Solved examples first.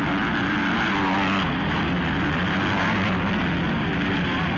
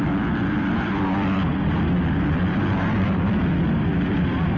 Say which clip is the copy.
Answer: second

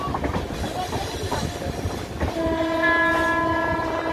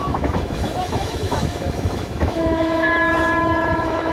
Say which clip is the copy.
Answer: second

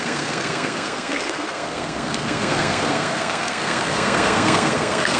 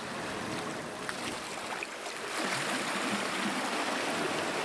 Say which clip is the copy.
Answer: first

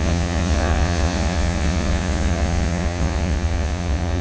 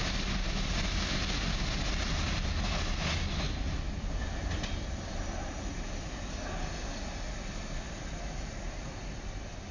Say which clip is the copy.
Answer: first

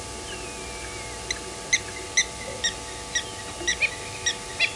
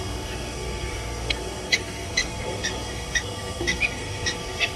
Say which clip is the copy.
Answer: second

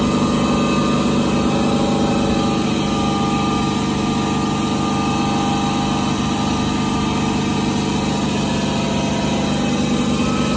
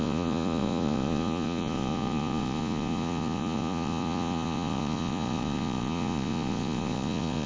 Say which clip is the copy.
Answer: second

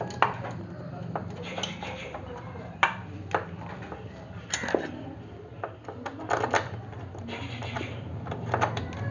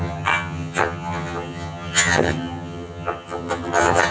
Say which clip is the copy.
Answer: second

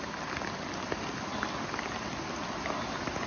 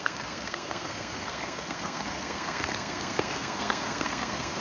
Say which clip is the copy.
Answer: second